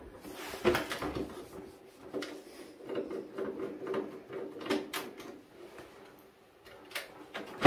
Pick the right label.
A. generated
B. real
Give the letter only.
B